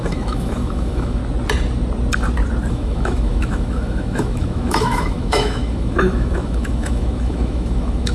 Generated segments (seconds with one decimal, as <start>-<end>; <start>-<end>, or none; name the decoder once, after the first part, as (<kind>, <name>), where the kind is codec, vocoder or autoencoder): 0.0-1.2 (autoencoder, DAC-VAE); 2.7-8.1